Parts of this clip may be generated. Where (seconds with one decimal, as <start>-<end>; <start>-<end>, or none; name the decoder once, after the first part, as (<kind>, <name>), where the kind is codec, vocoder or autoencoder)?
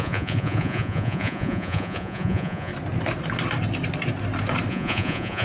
0.0-2.7 (vocoder, Vocos); 4.7-5.4